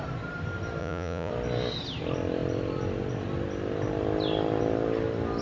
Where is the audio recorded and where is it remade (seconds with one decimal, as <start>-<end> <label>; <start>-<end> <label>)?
0.0-0.8 recorded; 0.8-1.3 remade; 1.3-5.4 recorded